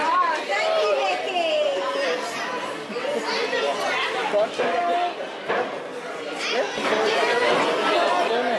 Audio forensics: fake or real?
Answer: real